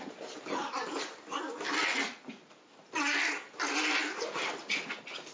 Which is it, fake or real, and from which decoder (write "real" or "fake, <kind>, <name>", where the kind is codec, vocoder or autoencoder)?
real